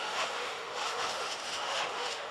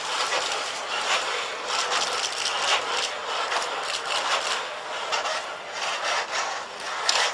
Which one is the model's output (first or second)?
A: first